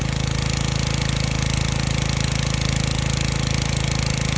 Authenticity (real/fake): real